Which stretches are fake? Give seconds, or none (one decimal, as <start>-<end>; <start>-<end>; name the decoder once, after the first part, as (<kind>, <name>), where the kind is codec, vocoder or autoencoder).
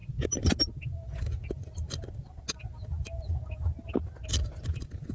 none